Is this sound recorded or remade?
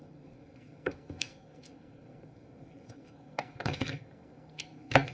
remade